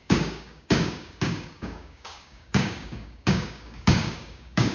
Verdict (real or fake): fake